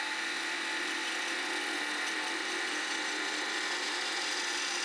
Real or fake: real